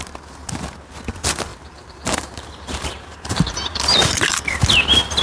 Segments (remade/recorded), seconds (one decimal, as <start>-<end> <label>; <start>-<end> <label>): 0.0-1.5 recorded; 1.5-4.6 remade; 4.6-5.2 recorded